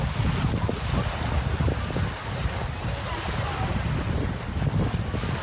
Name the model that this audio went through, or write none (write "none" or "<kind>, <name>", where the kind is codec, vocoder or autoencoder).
none